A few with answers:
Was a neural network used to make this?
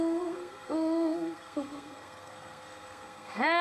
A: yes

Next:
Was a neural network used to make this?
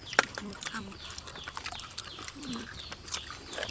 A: yes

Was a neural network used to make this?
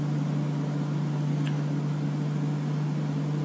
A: no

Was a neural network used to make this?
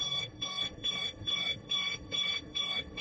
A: yes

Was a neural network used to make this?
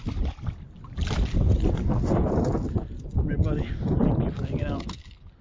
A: no